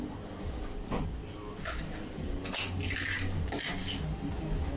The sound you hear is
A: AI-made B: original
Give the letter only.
B